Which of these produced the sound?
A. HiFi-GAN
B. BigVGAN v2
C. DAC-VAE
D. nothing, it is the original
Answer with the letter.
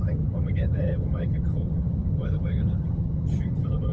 A